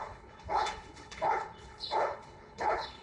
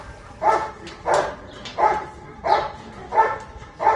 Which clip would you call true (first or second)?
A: second